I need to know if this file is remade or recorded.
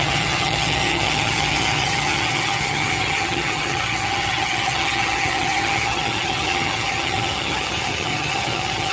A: remade